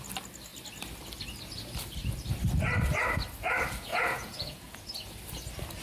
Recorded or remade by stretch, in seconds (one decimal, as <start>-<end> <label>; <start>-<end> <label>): 0.0-3.9 recorded; 3.9-4.8 remade; 4.8-5.8 recorded